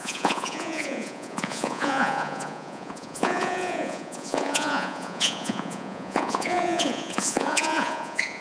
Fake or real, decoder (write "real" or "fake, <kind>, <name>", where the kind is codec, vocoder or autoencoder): fake, vocoder, Vocos